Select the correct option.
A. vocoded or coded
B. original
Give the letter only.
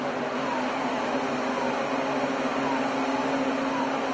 B